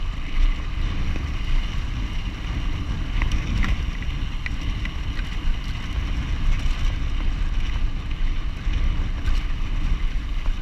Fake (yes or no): no